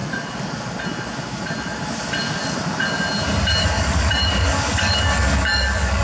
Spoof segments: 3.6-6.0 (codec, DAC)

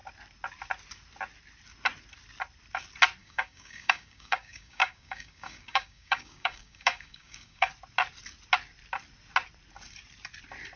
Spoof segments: 3.2-7.7 (codec, DAC)

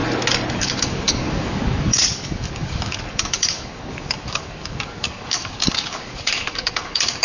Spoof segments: 0.5-7.2 (codec, DAC)

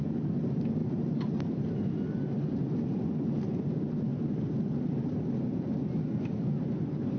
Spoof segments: none

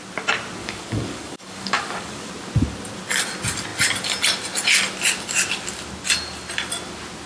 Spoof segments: 0.6-2.3 (codec, DAC)

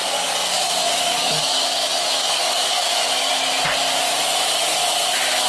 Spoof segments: 0.0-3.3 (codec, DAC)